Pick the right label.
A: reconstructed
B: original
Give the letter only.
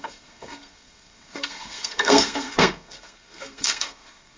A